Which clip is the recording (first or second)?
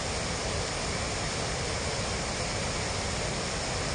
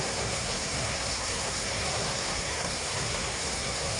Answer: first